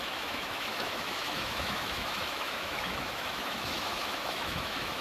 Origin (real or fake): fake